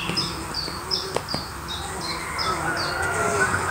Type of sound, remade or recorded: recorded